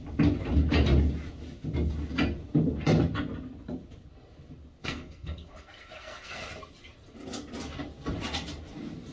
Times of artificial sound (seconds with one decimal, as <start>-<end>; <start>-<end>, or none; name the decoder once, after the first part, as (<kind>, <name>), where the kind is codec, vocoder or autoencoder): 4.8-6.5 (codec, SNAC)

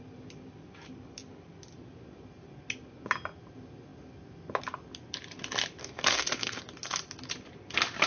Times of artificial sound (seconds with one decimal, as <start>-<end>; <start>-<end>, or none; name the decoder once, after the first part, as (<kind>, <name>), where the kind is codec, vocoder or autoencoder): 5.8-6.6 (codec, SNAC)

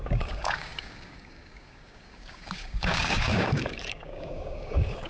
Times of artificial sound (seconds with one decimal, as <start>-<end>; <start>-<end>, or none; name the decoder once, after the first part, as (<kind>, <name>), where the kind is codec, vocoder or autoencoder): 0.0-5.1 (codec, DAC)